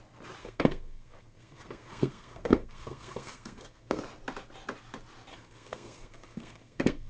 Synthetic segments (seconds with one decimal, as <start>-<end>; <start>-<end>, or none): 0.4-4.0; 5.3-7.1